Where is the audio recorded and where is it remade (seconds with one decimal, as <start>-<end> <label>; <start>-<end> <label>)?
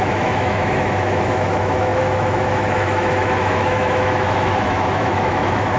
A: 0.0-5.8 remade